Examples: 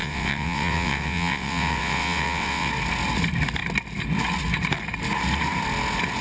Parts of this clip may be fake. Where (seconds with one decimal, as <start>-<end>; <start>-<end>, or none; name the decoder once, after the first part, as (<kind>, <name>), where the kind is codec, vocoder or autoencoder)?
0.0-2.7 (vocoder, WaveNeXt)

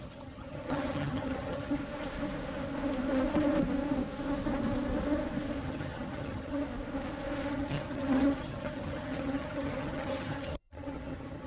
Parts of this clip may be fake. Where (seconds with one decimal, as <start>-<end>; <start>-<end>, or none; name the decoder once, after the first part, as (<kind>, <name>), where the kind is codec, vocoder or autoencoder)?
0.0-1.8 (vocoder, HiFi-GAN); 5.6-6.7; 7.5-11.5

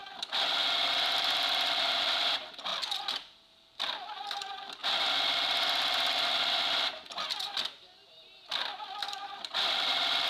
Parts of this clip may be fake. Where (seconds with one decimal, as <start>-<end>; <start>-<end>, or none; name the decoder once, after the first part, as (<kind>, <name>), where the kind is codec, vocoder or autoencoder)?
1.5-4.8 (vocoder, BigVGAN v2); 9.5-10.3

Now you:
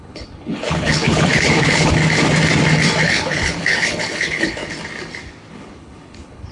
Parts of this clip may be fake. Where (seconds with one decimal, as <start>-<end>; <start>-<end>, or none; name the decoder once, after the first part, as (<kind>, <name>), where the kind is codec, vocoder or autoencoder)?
0.0-2.0 (codec, HILCodec); 3.0-4.6; 5.5-6.5